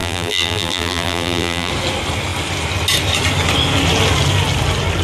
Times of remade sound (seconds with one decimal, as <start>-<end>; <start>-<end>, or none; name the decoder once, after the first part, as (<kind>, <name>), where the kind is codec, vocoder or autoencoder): 0.0-1.7 (vocoder, BigVGAN v2)